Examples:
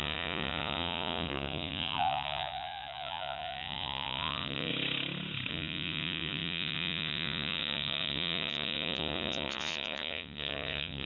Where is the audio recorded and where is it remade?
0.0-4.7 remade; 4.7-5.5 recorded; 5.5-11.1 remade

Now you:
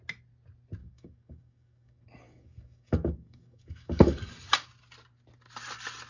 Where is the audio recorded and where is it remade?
0.0-0.8 recorded; 0.8-4.3 remade; 4.3-6.1 recorded

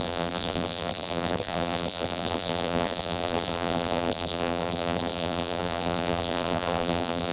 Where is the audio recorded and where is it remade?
0.0-7.3 remade

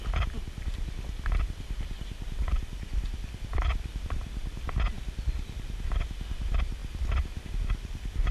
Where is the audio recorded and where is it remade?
0.0-8.3 recorded

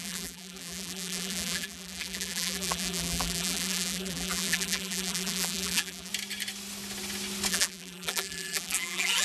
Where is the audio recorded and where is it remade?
0.0-6.1 remade; 6.1-7.5 recorded; 7.5-9.2 remade

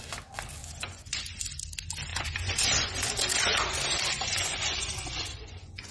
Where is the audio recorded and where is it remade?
0.0-0.6 recorded; 0.6-1.4 remade; 1.4-2.1 recorded; 2.1-5.9 remade

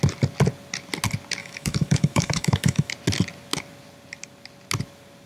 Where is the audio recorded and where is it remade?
0.0-1.4 recorded; 1.4-2.9 remade; 2.9-5.3 recorded

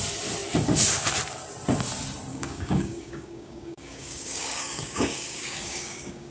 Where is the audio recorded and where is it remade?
0.0-2.3 recorded; 2.3-6.3 remade